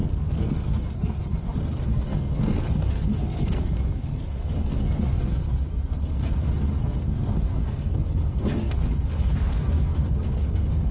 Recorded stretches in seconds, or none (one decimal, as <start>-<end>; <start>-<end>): none